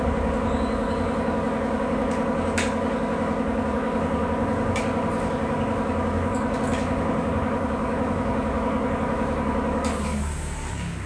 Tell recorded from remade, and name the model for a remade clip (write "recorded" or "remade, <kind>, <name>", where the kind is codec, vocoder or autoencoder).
remade, codec, DAC